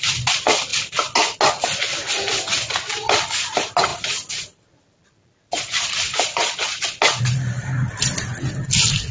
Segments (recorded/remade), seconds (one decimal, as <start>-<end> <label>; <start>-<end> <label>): 0.0-9.1 recorded